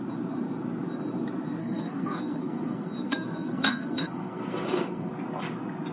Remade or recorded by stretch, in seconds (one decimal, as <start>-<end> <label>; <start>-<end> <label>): 0.0-1.6 recorded; 1.6-5.1 remade; 5.1-5.9 recorded

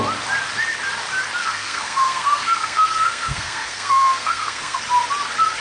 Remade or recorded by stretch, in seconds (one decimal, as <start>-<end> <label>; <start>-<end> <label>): 0.0-1.4 recorded; 1.4-4.8 remade; 4.8-5.6 recorded